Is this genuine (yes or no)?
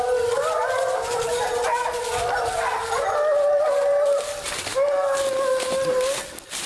yes